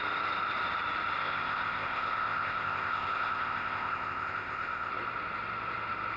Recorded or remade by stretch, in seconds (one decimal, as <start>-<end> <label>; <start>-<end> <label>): 0.0-1.2 recorded; 1.2-4.9 remade; 4.9-6.2 recorded